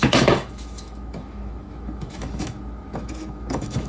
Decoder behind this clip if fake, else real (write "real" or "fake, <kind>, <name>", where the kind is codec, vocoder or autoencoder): fake, autoencoder, DAC-VAE